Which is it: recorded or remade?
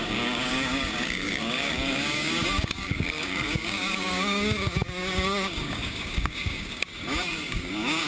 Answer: remade